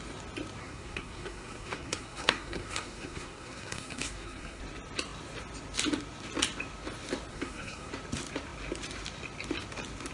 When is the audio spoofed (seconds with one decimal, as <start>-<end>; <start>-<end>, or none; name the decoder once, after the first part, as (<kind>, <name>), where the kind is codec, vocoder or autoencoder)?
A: 0.6-4.6 (codec, SNAC); 7.3-7.9